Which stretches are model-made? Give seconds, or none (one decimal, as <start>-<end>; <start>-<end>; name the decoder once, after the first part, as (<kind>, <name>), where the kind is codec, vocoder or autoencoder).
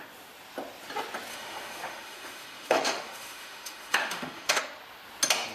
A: 1.3-4.6 (autoencoder, DAC-VAE)